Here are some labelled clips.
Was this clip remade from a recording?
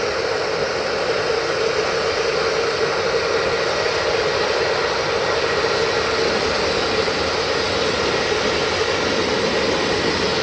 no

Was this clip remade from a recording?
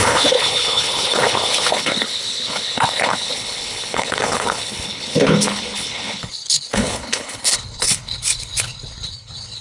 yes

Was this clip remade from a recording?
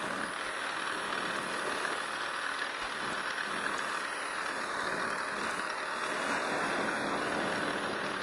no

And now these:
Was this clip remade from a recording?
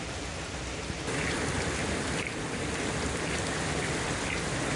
no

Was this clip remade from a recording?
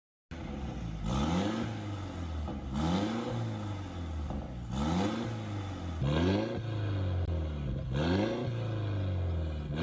no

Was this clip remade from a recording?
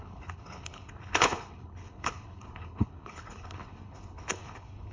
yes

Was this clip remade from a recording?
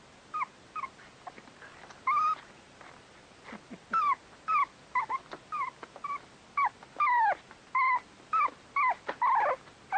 no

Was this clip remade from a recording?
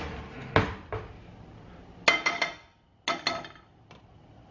no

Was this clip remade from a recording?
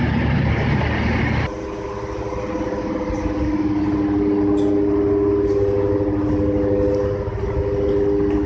no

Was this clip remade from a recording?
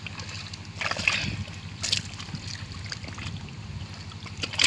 no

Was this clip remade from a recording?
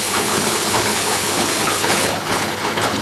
yes